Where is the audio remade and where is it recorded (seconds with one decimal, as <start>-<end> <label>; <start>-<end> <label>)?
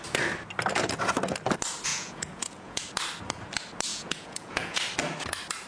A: 0.0-1.9 recorded; 1.9-2.8 remade; 2.8-3.9 recorded; 3.9-4.8 remade; 4.8-5.7 recorded